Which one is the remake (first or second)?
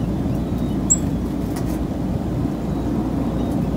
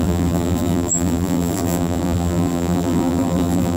second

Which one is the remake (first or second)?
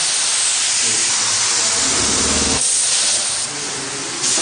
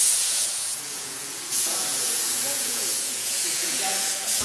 second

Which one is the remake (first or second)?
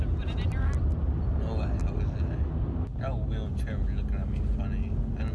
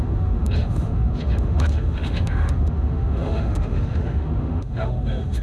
second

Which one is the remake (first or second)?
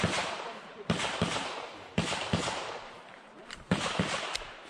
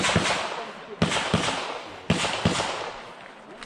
first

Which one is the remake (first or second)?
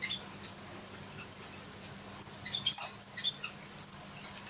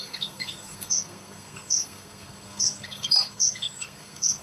second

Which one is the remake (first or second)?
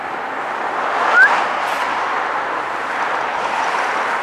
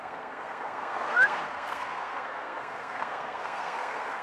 second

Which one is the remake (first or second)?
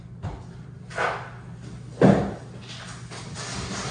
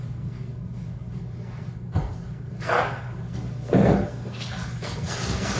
second